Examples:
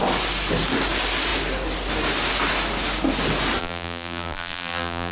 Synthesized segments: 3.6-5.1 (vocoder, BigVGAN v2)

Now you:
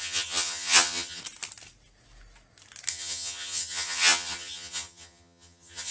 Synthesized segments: 0.0-1.2 (vocoder, HiFi-GAN); 2.9-5.9

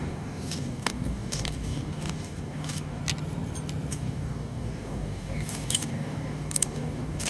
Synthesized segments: 0.0-3.0 (codec, DAC); 3.9-7.3